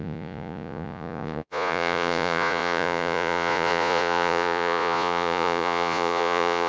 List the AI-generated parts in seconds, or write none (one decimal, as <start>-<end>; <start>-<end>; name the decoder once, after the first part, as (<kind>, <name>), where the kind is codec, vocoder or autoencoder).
0.0-6.7 (vocoder, Vocos)